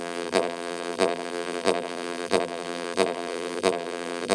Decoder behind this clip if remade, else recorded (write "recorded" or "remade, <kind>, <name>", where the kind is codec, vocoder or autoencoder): remade, vocoder, BigVGAN v2